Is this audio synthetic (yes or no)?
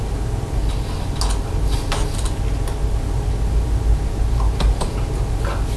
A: no